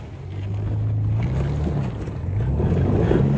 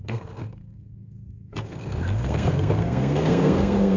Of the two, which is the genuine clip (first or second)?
first